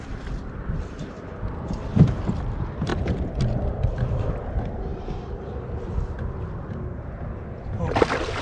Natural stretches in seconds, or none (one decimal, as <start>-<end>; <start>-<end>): none